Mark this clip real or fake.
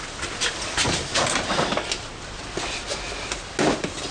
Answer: real